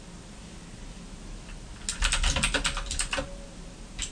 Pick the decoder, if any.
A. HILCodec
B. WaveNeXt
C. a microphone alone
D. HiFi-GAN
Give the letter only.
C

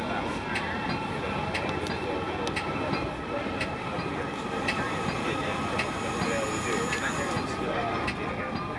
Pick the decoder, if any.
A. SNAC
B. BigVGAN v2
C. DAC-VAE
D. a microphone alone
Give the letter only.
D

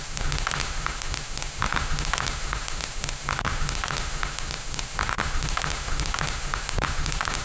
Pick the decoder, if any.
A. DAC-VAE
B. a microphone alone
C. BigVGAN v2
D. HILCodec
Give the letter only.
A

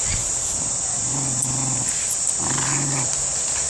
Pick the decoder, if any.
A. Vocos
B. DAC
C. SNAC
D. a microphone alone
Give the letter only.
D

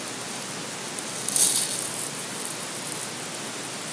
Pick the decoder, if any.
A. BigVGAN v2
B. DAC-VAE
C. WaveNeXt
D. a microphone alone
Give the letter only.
D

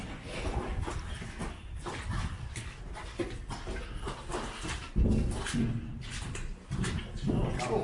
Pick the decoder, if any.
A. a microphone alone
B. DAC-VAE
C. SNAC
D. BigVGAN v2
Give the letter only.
A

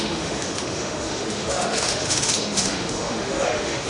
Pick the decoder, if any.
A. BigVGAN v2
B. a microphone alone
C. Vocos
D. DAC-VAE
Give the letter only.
D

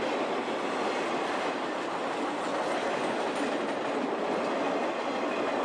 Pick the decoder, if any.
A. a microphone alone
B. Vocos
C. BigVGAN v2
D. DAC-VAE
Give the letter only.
A